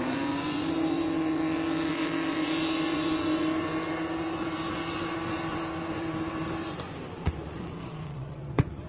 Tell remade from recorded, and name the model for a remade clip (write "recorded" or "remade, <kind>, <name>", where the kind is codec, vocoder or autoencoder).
remade, vocoder, Vocos